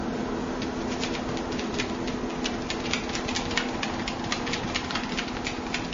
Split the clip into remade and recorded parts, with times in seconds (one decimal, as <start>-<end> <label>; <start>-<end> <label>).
0.0-5.9 recorded